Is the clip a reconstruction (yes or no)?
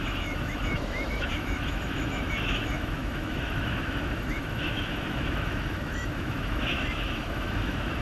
yes